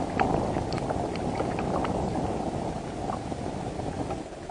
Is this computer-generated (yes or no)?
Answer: no